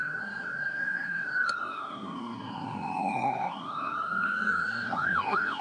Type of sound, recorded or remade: remade